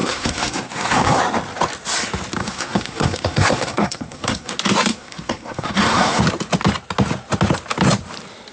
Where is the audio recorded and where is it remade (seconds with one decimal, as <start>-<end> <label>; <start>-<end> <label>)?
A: 0.0-1.2 remade; 1.2-2.4 recorded; 2.4-4.5 remade; 4.5-4.9 recorded; 4.9-6.2 remade; 6.2-8.5 recorded